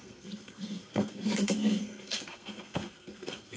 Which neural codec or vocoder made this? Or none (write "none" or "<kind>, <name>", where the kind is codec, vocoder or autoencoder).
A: codec, SNAC